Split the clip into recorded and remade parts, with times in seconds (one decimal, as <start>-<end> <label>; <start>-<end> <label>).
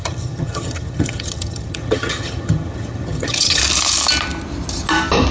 0.0-3.6 remade; 3.6-5.3 recorded